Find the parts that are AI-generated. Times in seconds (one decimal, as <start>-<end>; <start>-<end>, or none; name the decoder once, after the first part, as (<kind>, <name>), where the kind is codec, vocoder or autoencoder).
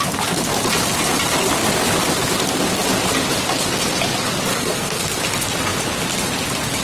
4.5-5.2 (codec, SNAC)